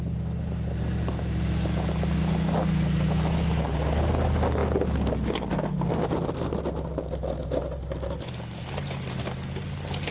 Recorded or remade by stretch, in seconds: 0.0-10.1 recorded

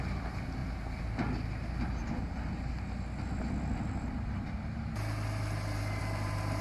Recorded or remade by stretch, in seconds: 0.0-6.6 recorded

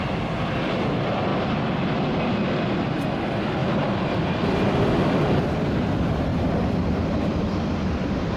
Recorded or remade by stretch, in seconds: 0.0-1.3 recorded; 1.3-2.3 remade; 2.3-3.6 recorded; 3.6-5.2 remade; 5.2-6.3 recorded; 6.3-8.4 remade

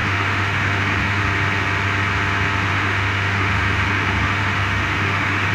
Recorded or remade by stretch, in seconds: 0.0-1.2 remade; 1.2-2.7 recorded; 2.7-5.5 remade

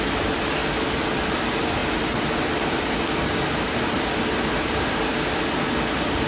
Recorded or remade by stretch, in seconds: 0.0-0.6 recorded; 0.6-1.2 remade; 1.2-1.8 recorded; 1.8-5.4 remade; 5.4-6.3 recorded